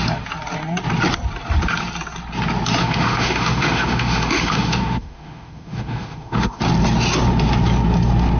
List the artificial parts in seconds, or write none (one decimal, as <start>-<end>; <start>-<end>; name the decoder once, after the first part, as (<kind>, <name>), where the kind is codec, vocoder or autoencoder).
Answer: 2.8-6.6 (autoencoder, DAC-VAE)